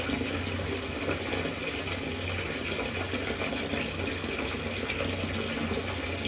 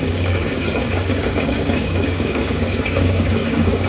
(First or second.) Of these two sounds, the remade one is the second